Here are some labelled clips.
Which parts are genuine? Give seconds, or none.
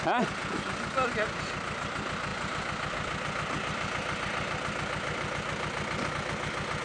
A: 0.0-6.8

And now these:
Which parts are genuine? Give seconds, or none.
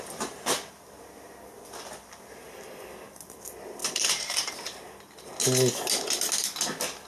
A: 0.0-3.8; 4.5-7.1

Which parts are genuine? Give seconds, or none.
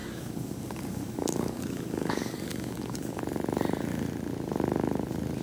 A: 3.2-5.4